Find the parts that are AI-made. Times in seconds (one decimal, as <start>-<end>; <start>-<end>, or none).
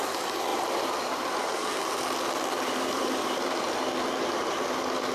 0.5-1.3